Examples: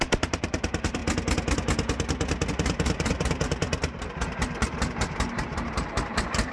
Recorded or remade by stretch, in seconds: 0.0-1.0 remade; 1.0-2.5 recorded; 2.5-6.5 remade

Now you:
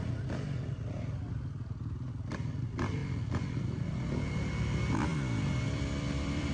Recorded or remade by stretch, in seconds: 0.0-3.0 recorded; 3.0-4.1 remade; 4.1-5.1 recorded; 5.1-6.5 remade

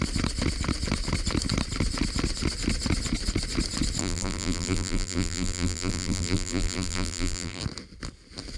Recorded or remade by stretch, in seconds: 0.0-4.0 recorded; 4.0-7.6 remade; 7.6-8.6 recorded

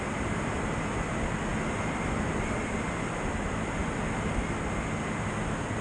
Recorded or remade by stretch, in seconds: 0.0-5.8 recorded

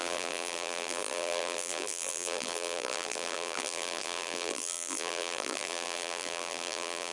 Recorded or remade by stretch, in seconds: 0.0-7.1 remade

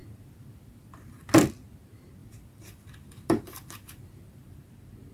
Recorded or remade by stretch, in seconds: 0.0-1.3 remade; 1.3-2.2 recorded; 2.2-4.6 remade; 4.6-5.1 recorded

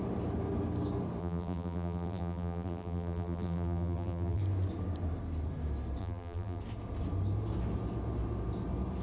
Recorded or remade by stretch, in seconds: 0.0-1.2 recorded; 1.2-4.4 remade; 4.4-6.0 recorded; 6.0-6.6 remade; 6.6-9.0 recorded